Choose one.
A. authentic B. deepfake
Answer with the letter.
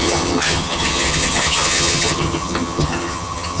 B